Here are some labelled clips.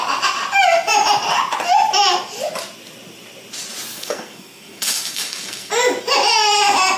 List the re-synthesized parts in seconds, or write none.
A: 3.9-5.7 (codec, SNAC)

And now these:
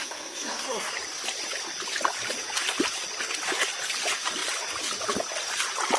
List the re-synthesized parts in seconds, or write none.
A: 0.0-0.9 (codec, SNAC)

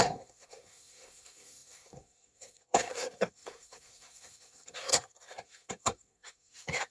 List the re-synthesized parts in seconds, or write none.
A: 0.0-6.9 (codec, SNAC)

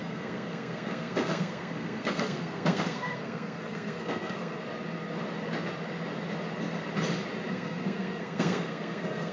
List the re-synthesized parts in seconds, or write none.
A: 0.0-4.6 (codec, SNAC); 7.5-9.3

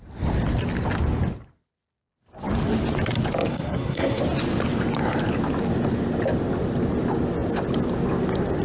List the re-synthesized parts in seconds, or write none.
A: 3.5-4.2 (codec, SNAC)